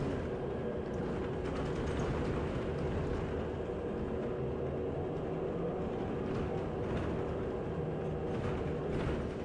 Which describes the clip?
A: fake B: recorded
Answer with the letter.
B